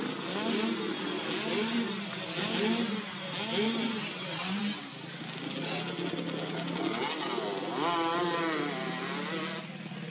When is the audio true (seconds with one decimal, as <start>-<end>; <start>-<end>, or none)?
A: 0.0-4.1; 4.6-10.1